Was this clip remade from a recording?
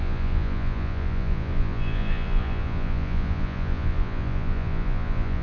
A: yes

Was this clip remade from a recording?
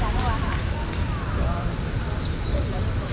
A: no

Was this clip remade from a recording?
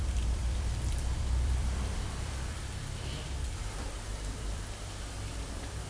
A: yes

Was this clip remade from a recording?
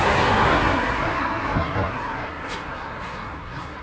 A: yes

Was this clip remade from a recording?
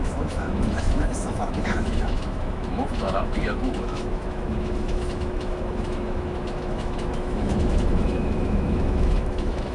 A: yes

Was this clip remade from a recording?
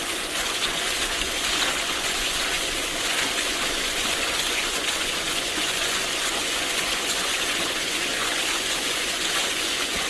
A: yes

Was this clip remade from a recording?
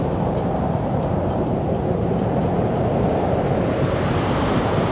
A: yes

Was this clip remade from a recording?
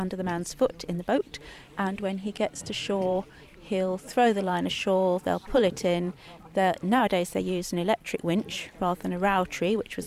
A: yes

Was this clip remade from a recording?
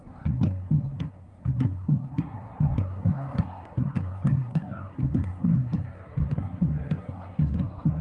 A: yes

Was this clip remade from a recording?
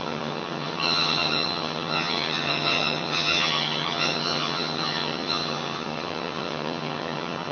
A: yes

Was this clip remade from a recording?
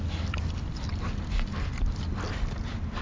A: no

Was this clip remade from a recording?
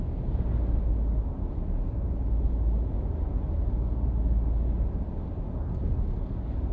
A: no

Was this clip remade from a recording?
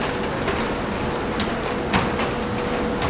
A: no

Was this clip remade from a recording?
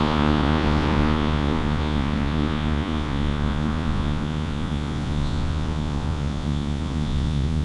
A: yes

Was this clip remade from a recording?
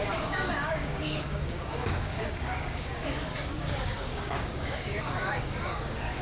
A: yes